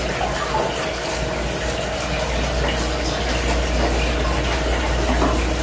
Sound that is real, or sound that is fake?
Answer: real